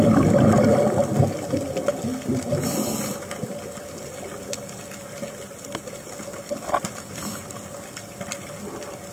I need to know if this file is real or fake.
real